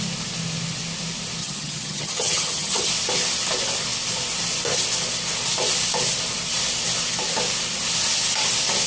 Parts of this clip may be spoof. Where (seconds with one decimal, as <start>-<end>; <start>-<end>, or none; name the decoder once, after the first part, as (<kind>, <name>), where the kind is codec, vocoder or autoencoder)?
1.4-2.9 (vocoder, HiFi-GAN)

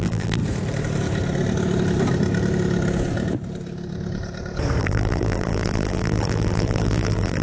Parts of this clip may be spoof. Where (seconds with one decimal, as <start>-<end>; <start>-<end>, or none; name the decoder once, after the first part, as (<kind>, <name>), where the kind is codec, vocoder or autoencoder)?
0.0-0.4 (vocoder, BigVGAN v2); 4.8-7.4

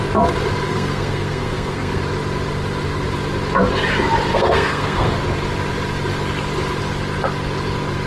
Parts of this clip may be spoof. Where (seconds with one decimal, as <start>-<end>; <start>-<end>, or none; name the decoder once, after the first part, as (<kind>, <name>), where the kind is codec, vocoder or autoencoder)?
0.7-2.0 (codec, SNAC); 4.3-5.1

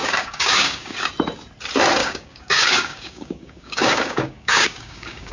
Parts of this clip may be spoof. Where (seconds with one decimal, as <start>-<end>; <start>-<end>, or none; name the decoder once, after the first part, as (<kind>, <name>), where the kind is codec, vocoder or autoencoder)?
0.0-1.1 (codec, DAC); 2.0-5.3

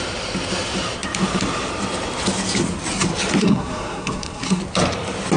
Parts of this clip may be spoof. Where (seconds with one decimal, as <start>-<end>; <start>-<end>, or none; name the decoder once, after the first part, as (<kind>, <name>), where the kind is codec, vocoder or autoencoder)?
3.4-4.6 (codec, SNAC)

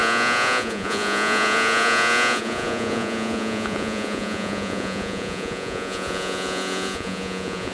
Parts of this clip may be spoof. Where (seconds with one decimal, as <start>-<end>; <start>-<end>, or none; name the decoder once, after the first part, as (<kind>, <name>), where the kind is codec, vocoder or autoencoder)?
0.0-7.7 (vocoder, Vocos)

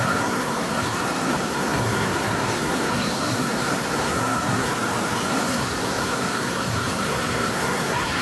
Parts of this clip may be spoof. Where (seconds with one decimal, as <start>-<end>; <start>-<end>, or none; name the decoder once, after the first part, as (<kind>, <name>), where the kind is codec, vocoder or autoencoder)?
0.0-4.7 (codec, SNAC); 5.3-8.2